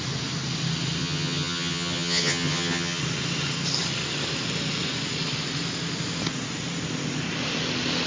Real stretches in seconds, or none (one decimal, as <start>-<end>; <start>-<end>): 0.0-1.0; 3.0-8.1